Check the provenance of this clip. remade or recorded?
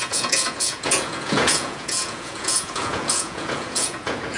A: remade